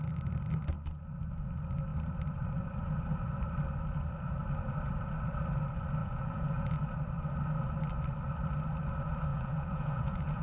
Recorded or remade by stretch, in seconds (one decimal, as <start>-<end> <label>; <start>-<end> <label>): 0.0-6.0 recorded; 6.0-6.8 remade; 6.8-9.3 recorded; 9.3-10.4 remade

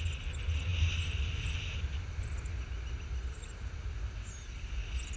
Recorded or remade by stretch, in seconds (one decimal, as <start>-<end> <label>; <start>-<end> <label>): 0.0-5.2 recorded

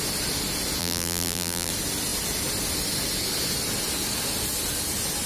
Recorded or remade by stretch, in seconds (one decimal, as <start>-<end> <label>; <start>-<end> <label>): 0.0-0.8 recorded; 0.8-1.7 remade; 1.7-5.3 recorded

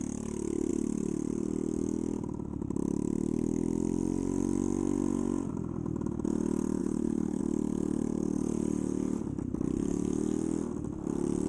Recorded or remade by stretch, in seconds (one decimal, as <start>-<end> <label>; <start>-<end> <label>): 0.0-6.8 recorded; 6.8-7.4 remade; 7.4-11.5 recorded

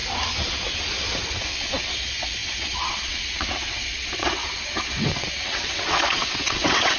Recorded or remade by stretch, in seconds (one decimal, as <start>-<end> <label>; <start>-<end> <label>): 0.0-0.9 recorded; 0.9-7.0 remade